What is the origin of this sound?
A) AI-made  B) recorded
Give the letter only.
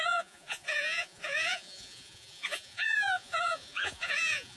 A